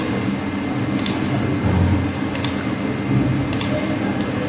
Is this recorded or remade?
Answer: recorded